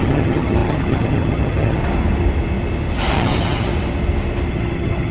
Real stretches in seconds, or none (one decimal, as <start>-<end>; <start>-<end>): 1.8-3.1; 3.7-4.5